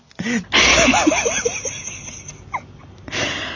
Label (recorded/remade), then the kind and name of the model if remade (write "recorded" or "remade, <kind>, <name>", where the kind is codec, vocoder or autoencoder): recorded